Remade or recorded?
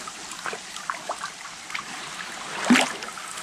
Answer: recorded